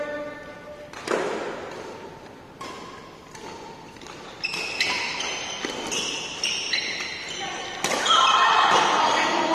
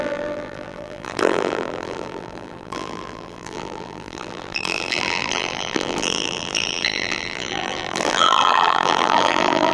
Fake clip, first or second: second